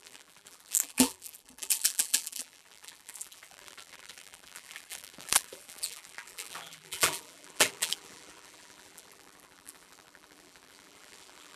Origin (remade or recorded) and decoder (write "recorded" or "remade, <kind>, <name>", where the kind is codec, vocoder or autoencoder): remade, vocoder, BigVGAN v2